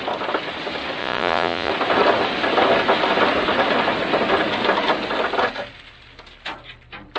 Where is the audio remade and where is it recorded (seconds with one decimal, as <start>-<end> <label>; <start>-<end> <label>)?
0.0-1.0 recorded; 1.0-1.7 remade; 1.7-7.2 recorded